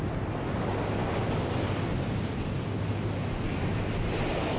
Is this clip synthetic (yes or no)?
no